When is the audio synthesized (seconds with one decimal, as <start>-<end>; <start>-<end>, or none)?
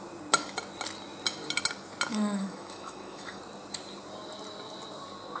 2.1-3.4